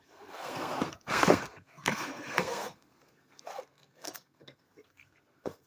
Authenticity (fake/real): fake